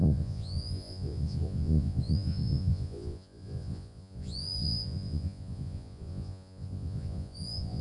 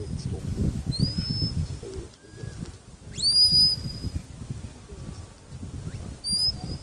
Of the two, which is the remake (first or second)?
first